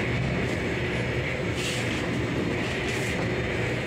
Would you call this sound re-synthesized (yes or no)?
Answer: no